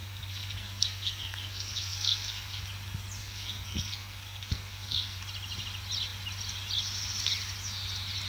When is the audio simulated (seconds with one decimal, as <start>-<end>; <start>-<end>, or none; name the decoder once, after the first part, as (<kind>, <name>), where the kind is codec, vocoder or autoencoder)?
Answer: 0.0-2.6 (codec, SNAC); 3.2-5.2